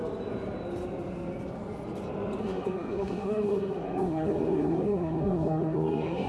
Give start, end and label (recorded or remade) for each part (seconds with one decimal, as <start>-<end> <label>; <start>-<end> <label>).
0.0-2.4 recorded; 2.4-6.3 remade